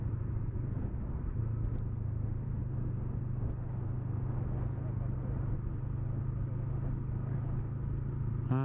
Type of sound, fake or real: real